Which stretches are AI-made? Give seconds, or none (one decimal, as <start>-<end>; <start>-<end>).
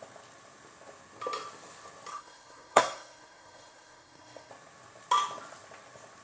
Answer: 2.1-4.5